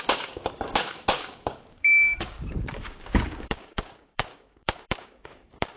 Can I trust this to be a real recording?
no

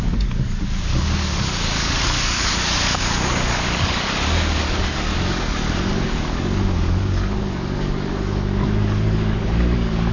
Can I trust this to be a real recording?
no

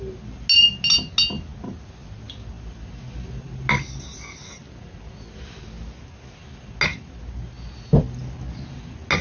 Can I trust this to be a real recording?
yes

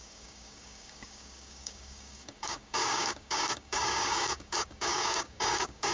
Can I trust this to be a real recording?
no